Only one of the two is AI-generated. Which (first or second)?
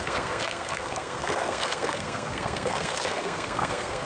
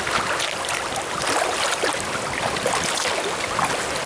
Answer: first